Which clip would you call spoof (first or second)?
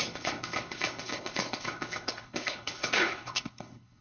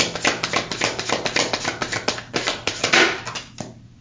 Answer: first